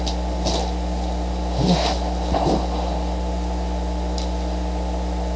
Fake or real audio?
real